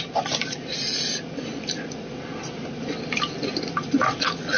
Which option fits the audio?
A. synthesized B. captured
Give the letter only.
B